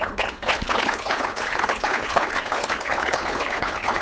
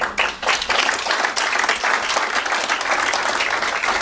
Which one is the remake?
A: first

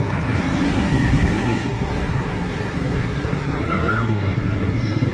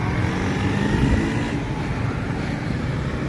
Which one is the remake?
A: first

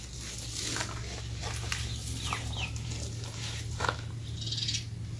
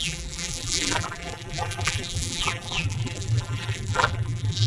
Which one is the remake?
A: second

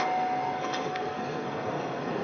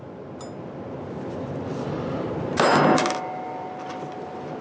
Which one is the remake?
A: first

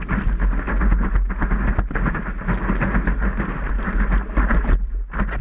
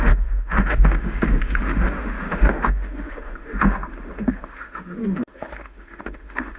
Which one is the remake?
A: second